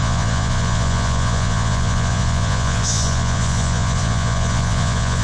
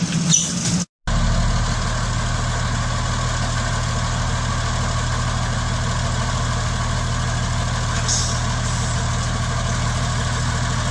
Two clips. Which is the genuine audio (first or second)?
second